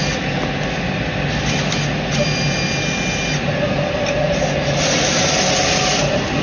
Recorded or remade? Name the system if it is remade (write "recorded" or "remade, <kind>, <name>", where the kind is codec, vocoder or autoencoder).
recorded